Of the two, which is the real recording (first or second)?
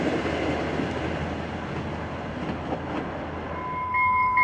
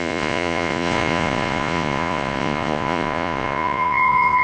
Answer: first